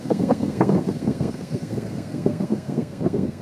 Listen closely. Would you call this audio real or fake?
fake